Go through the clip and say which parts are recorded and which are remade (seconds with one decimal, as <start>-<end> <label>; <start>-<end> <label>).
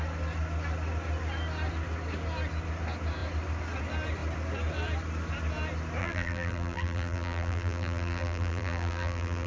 0.0-6.0 recorded; 6.0-9.5 remade